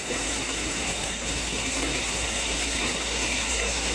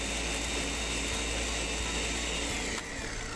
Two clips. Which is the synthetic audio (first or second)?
first